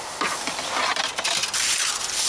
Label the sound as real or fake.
real